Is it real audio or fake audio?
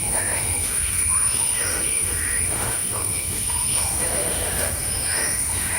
fake